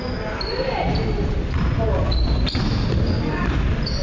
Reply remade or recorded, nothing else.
recorded